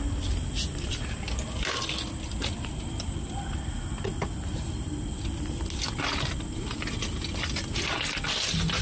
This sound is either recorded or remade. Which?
recorded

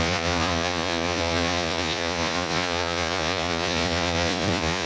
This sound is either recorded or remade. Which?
remade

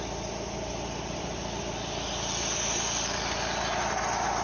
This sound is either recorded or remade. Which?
recorded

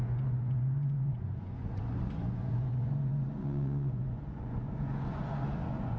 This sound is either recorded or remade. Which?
remade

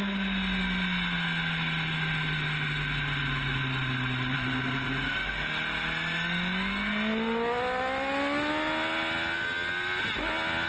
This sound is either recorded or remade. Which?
recorded